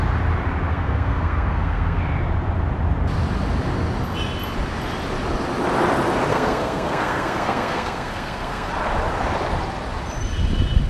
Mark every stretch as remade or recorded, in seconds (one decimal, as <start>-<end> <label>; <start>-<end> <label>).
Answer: 0.0-0.7 recorded; 0.7-2.0 remade; 2.0-6.3 recorded; 6.3-8.7 remade; 8.7-10.9 recorded